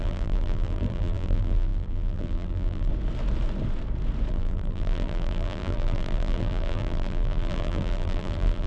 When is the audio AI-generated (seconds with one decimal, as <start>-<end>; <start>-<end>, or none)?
0.0-2.9; 4.3-8.7